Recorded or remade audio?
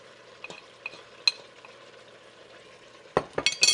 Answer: recorded